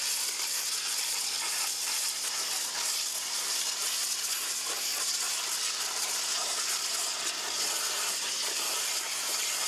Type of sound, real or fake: real